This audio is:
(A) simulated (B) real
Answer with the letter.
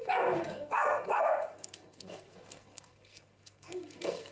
A